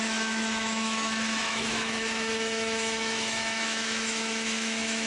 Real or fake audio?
fake